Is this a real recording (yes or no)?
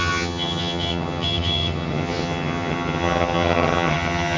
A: no